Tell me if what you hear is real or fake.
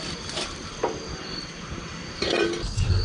real